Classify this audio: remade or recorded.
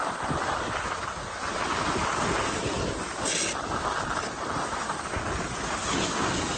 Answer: recorded